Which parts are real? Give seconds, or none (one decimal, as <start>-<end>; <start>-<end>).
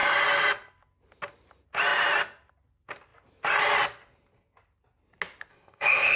0.0-5.5